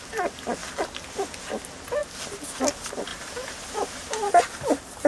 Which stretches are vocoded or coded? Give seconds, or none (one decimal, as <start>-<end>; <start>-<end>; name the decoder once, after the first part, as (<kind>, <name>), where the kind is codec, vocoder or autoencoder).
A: 3.1-4.3 (vocoder, BigVGAN v2)